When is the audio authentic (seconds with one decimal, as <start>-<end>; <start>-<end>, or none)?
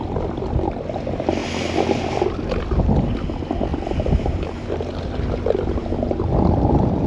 0.0-3.7; 4.8-7.1